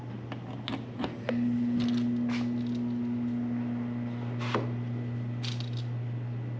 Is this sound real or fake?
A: real